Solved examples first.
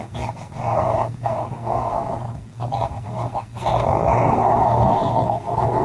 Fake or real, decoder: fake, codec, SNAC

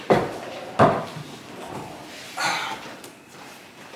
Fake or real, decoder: real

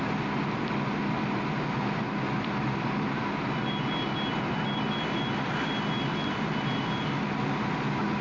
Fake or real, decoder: real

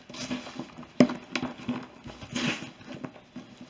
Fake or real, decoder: real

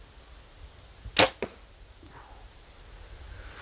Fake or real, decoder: real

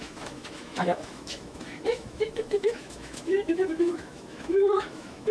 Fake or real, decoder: fake, autoencoder, DAC-VAE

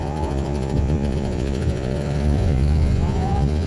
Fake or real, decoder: fake, vocoder, Vocos